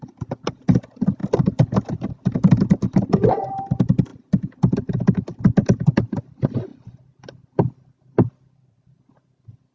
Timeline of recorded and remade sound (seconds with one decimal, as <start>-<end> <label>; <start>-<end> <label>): 0.0-9.7 recorded